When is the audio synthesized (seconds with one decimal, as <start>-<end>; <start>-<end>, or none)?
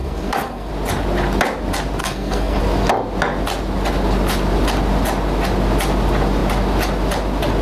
0.0-0.7; 2.0-2.6